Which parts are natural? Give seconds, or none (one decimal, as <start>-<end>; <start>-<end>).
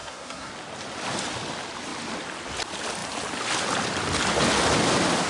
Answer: 0.5-5.3